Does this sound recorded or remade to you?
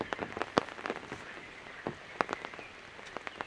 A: recorded